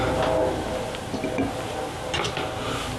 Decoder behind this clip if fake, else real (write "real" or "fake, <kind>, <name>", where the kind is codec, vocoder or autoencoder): real